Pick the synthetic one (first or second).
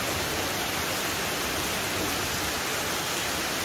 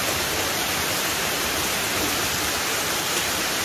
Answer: second